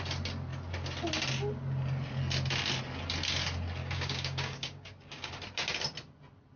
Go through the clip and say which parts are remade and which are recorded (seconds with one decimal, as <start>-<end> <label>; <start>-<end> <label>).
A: 0.0-3.8 recorded; 3.8-5.3 remade; 5.3-6.6 recorded